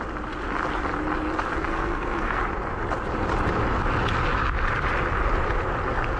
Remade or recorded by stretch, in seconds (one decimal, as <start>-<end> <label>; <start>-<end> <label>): 0.0-1.7 recorded; 1.7-2.4 remade; 2.4-6.2 recorded